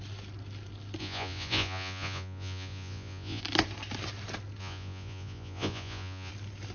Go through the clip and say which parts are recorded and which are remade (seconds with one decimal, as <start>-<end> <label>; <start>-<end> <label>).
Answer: 0.0-1.0 recorded; 1.0-3.4 remade; 3.4-4.6 recorded; 4.6-6.3 remade; 6.3-6.7 recorded